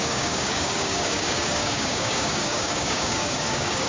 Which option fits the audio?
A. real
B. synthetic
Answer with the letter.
B